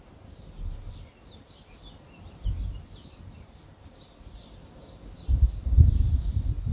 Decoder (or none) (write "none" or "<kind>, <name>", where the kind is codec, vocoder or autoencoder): none